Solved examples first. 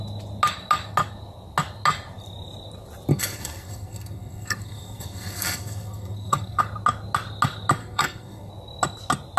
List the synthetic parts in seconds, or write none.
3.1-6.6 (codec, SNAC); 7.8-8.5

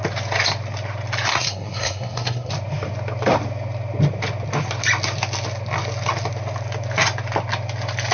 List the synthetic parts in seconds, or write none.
1.3-2.5 (codec, SNAC)

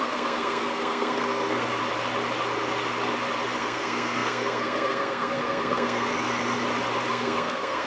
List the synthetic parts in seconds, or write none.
0.0-1.8 (codec, SNAC); 3.6-6.1; 7.1-7.9

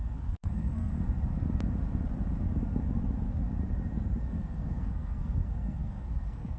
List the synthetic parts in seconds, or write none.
0.0-0.9 (codec, SNAC); 4.2-6.6

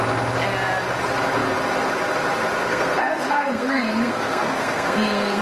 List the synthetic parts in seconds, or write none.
2.7-5.4 (codec, SNAC)

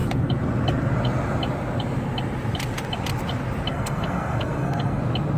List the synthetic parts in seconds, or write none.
3.7-5.0 (codec, SNAC)

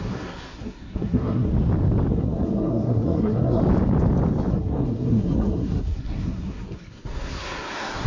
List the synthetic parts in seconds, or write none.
0.0-1.5 (codec, SNAC); 2.1-3.6; 4.5-8.1